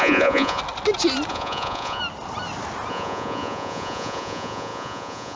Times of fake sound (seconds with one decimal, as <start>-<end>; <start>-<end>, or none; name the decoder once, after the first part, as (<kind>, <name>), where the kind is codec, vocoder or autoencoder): 0.0-0.6 (vocoder, Vocos); 1.3-2.0; 2.9-5.4